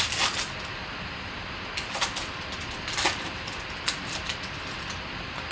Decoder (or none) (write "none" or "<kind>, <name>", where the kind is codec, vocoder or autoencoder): none